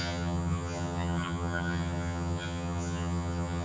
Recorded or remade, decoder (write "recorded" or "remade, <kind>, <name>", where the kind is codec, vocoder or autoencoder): remade, vocoder, HiFi-GAN